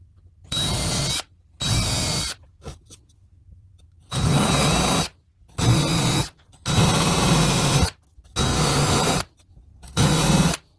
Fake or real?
real